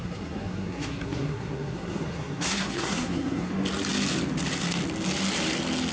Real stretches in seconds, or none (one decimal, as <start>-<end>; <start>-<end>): 3.5-5.9